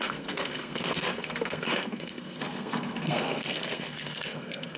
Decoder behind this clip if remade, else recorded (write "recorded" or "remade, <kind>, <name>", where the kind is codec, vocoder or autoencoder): remade, codec, SNAC